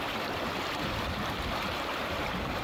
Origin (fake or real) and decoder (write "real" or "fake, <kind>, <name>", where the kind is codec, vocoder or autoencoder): real